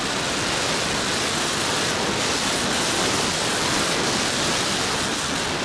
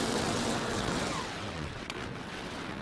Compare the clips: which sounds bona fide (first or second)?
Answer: first